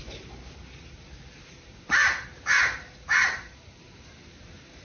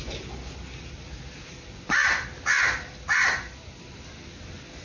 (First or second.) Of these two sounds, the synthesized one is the first